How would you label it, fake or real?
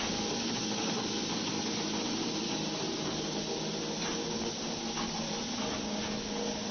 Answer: real